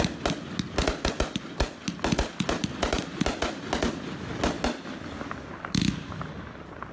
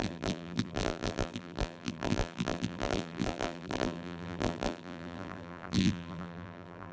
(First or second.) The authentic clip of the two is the first